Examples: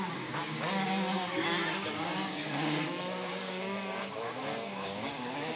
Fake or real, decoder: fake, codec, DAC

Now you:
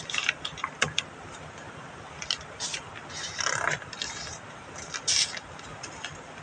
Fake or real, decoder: real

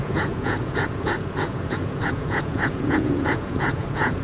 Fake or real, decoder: fake, vocoder, Vocos